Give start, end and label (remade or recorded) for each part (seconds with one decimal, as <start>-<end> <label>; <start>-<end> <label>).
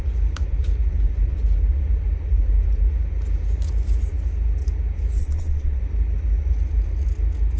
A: 0.0-5.2 recorded; 5.2-5.8 remade; 5.8-7.6 recorded